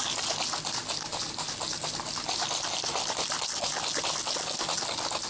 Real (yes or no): yes